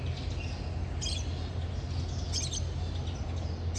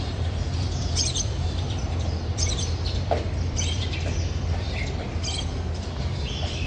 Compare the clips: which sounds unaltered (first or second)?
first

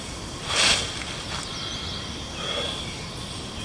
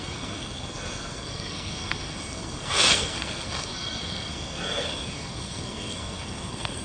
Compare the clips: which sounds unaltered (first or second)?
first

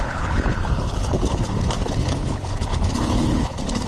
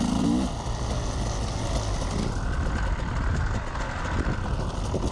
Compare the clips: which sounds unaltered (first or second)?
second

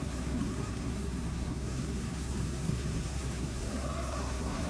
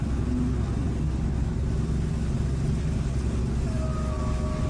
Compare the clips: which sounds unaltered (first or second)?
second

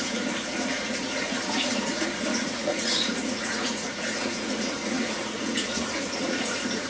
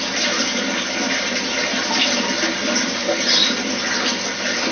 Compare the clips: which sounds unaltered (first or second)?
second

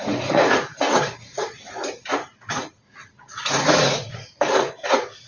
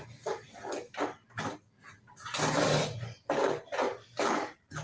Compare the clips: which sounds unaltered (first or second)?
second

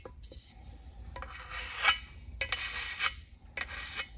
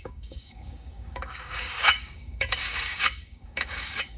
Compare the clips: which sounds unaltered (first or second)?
first